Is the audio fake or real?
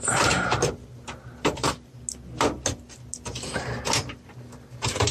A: real